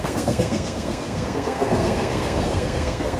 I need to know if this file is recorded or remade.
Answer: remade